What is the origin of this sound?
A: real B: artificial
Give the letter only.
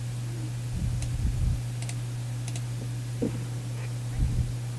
A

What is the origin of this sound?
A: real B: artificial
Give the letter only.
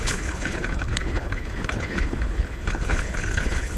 B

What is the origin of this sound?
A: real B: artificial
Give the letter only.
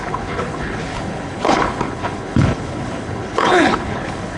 B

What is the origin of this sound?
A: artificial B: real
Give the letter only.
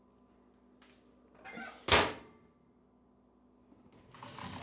B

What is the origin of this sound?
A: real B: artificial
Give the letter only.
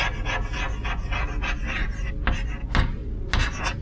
A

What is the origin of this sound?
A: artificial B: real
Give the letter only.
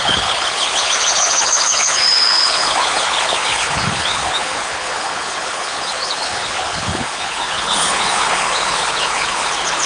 A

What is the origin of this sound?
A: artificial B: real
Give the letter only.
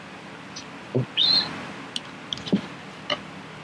B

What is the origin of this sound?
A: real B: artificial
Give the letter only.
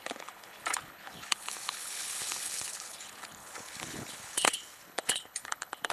B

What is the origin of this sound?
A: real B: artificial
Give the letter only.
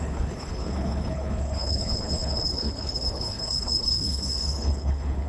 B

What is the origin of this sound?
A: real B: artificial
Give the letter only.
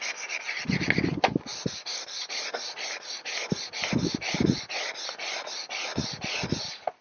A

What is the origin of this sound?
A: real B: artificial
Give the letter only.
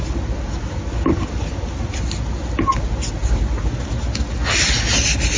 A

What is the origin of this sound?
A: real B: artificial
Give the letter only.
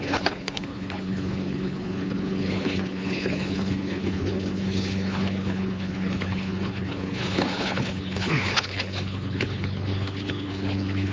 B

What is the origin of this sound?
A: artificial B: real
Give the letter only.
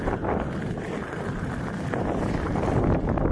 B